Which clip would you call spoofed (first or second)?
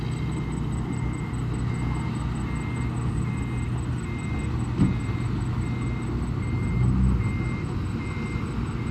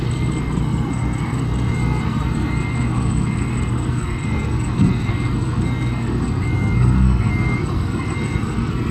second